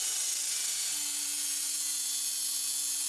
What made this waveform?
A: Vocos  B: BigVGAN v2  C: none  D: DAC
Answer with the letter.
C